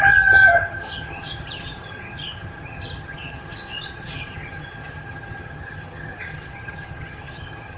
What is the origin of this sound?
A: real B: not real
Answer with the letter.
B